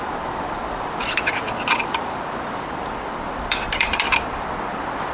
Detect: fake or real fake